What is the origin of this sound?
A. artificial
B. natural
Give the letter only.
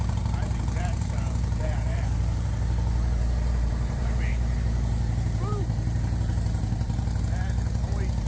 A